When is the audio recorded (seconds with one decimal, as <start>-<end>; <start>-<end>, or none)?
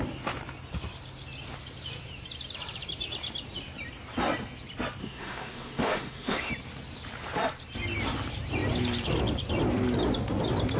0.0-5.0; 6.5-10.8